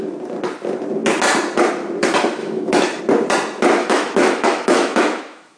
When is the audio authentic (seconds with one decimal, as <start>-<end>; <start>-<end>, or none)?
0.0-2.4; 3.0-3.8